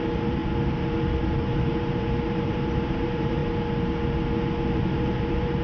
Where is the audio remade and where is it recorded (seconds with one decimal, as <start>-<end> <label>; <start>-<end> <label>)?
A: 0.0-0.4 remade; 0.4-1.1 recorded; 1.1-3.4 remade; 3.4-4.7 recorded; 4.7-5.6 remade